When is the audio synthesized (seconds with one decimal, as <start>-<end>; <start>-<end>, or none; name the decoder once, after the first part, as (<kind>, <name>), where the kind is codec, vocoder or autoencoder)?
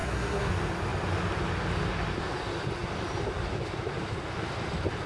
0.0-0.5 (codec, SNAC)